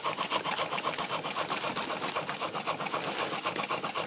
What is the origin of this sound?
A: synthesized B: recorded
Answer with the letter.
B